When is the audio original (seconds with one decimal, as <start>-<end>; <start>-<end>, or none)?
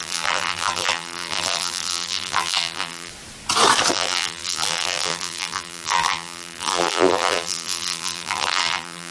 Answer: 3.1-3.9